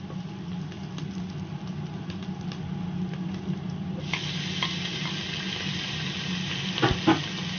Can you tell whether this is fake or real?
real